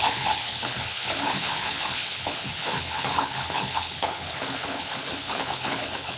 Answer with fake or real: fake